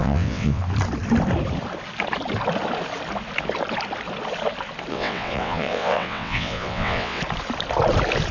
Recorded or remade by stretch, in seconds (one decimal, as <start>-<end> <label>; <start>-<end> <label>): 0.0-0.6 remade; 0.6-4.9 recorded; 4.9-7.2 remade; 7.2-8.3 recorded